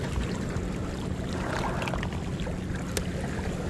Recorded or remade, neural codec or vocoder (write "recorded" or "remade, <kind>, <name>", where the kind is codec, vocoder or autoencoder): recorded